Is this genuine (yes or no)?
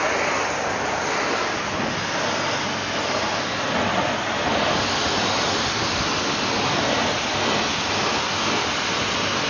yes